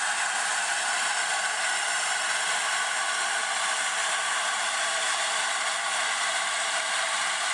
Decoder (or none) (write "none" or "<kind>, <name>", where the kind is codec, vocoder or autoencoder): none